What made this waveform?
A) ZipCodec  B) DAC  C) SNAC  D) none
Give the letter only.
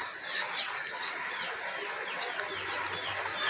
D